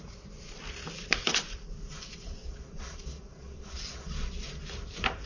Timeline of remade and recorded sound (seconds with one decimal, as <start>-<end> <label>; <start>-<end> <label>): 0.0-2.4 recorded; 2.4-4.6 remade; 4.6-5.3 recorded